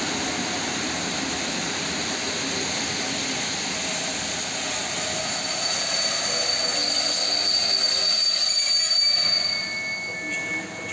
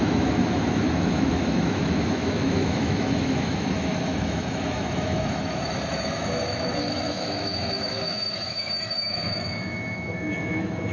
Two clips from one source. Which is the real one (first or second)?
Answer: first